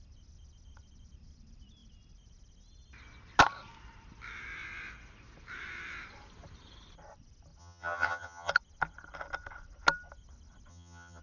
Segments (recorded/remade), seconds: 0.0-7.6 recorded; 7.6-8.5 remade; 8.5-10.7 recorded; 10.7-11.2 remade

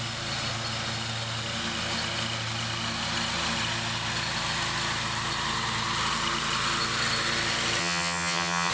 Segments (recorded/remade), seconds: 0.0-7.8 recorded; 7.8-8.7 remade

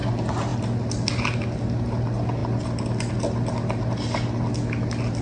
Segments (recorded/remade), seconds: 0.0-5.2 recorded

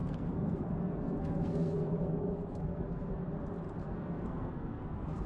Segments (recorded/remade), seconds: 0.0-3.2 remade; 3.2-3.8 recorded; 3.8-5.3 remade

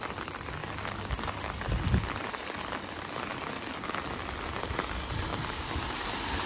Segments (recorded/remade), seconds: 0.0-5.3 recorded; 5.3-6.1 remade; 6.1-6.5 recorded